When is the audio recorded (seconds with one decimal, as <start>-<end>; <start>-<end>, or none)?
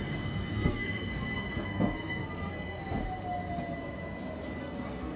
3.0-4.6